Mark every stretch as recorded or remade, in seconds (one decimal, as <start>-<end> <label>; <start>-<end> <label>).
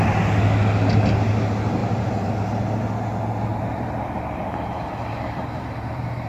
0.0-1.8 recorded; 1.8-2.4 remade; 2.4-3.5 recorded; 3.5-6.3 remade